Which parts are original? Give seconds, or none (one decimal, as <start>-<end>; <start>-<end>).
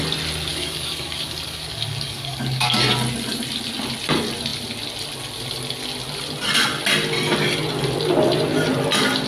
0.0-0.5; 2.8-9.3